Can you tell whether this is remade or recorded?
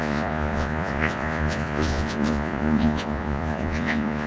remade